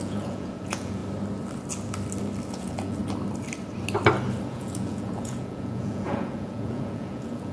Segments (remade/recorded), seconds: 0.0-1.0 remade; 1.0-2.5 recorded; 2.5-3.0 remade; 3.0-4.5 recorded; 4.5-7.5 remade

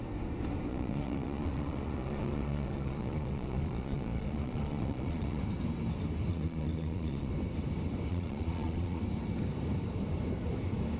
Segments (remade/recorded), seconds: 0.0-0.7 recorded; 0.7-5.4 remade; 5.4-6.3 recorded; 6.3-7.3 remade; 7.3-8.1 recorded; 8.1-9.0 remade; 9.0-11.0 recorded